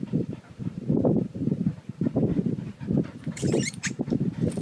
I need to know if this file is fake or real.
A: fake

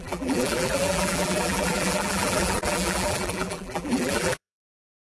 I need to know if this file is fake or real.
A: fake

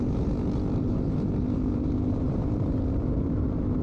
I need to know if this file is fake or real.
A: fake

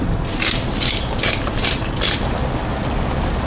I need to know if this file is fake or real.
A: real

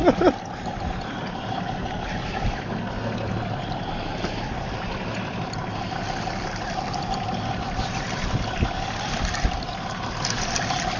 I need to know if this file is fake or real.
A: real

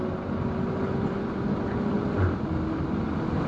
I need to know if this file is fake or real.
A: real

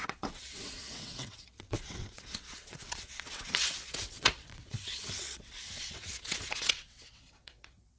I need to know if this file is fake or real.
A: fake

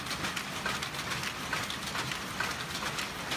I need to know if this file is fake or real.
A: real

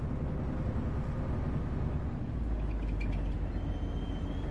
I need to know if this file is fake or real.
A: real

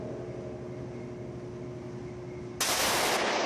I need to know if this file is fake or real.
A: real